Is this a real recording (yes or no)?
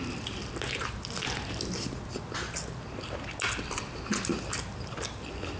yes